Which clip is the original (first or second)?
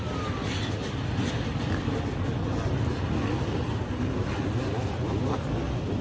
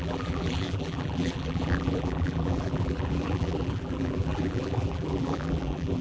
first